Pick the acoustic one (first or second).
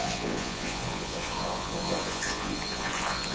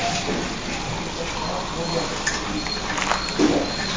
second